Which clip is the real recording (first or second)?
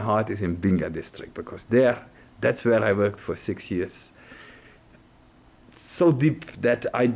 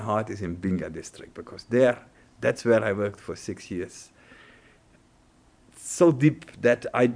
first